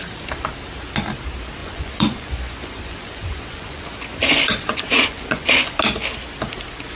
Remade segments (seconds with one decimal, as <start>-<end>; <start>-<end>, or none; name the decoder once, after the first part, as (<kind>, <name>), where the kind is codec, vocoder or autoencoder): 1.6-5.8 (vocoder, Vocos)